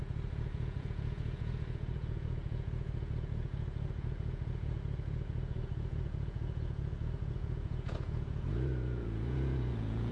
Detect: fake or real fake